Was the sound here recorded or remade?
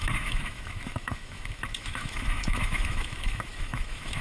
remade